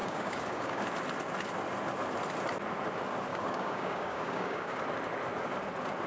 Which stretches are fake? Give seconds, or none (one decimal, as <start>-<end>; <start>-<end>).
0.0-0.8; 3.3-4.8